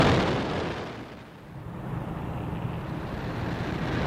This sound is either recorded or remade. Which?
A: recorded